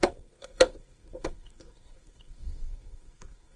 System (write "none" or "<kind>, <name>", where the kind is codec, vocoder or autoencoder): codec, SNAC